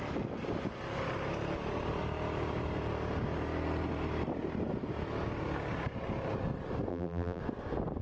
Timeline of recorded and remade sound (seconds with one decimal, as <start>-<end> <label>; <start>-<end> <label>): 0.0-6.9 recorded; 6.9-7.4 remade; 7.4-8.0 recorded